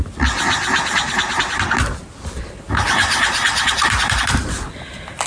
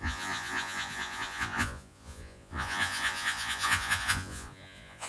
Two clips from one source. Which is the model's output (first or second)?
second